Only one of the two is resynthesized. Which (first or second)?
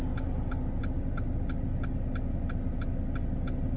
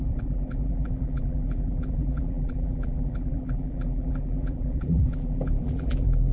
second